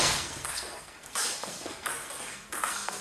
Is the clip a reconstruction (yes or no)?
yes